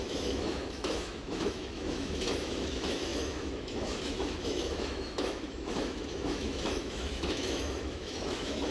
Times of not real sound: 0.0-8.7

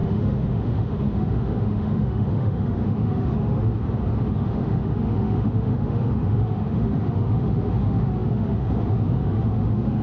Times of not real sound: 0.0-3.7; 4.3-10.0

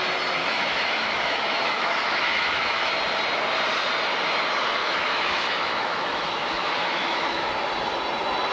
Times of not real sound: 0.4-2.9; 4.8-7.5

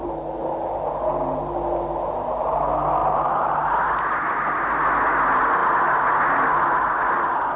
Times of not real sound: none

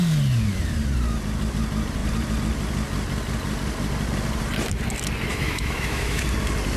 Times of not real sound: 5.3-6.2